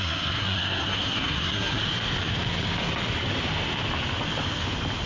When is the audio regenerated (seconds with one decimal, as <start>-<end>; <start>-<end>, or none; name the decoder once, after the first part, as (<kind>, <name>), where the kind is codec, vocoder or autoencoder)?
0.0-1.8 (codec, SNAC)